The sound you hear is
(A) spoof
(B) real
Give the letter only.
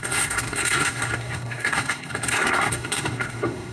A